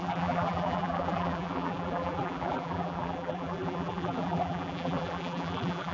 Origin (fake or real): fake